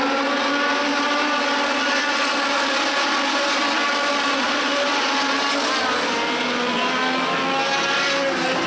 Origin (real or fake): real